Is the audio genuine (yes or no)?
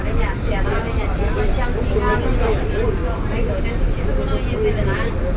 yes